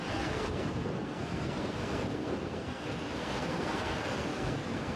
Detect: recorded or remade remade